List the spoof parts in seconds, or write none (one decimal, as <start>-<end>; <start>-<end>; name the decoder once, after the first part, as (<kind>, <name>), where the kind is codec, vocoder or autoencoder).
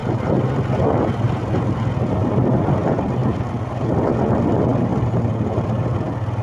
none